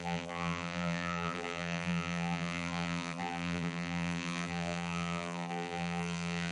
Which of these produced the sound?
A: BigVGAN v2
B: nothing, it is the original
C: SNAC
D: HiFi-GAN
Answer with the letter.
A